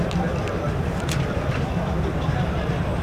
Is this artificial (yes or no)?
no